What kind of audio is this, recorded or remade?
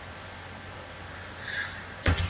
remade